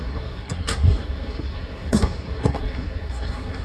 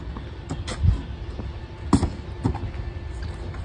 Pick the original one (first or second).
second